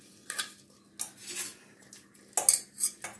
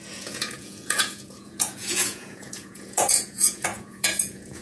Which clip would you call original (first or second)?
first